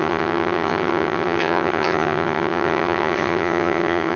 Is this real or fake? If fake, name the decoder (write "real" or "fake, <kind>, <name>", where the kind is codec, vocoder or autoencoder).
fake, vocoder, HiFi-GAN